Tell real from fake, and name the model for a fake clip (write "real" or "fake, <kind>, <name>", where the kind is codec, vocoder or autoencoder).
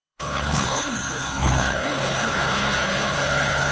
fake, codec, HILCodec